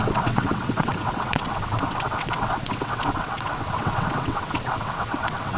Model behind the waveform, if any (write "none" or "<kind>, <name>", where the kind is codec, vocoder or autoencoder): vocoder, WaveNeXt